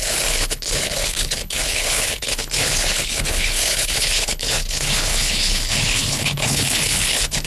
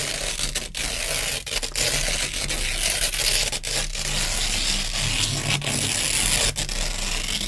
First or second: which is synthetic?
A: first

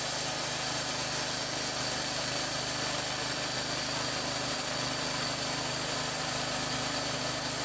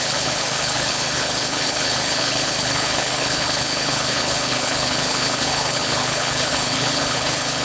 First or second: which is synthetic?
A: second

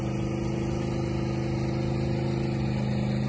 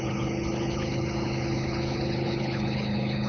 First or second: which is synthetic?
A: second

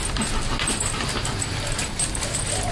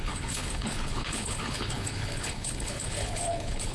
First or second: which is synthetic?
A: second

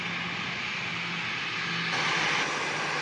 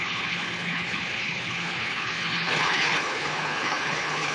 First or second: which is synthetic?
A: second